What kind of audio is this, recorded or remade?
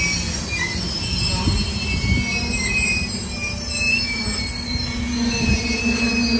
recorded